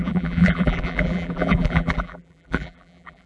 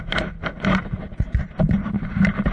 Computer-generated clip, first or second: first